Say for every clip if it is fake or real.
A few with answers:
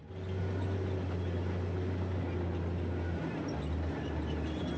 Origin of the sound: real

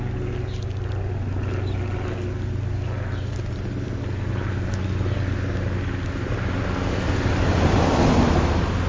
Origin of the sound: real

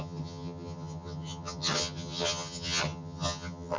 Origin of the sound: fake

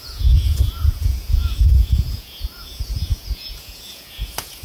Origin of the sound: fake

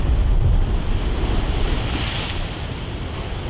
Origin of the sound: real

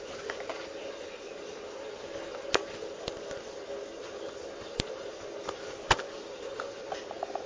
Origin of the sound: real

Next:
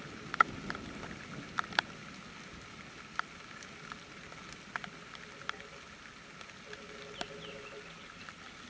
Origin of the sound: real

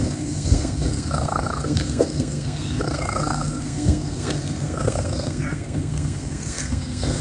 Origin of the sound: fake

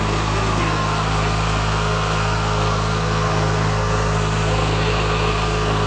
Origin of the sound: fake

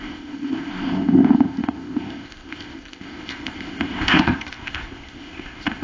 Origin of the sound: fake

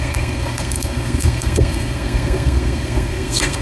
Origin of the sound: fake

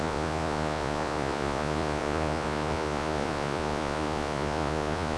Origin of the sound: fake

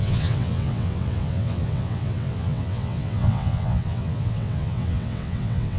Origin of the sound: fake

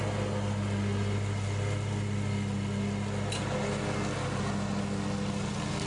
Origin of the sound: real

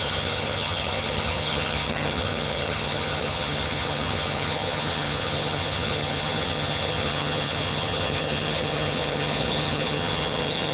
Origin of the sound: fake